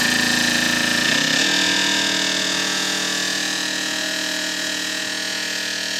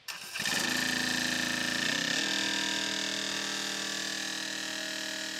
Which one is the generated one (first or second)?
first